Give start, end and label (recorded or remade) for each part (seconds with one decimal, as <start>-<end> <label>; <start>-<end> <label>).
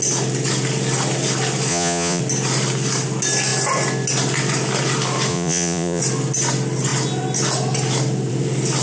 0.0-1.7 recorded; 1.7-2.2 remade; 2.2-5.3 recorded; 5.3-6.0 remade; 6.0-8.8 recorded